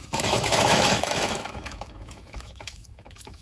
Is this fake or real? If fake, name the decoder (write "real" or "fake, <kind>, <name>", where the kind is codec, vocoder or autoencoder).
fake, autoencoder, DAC-VAE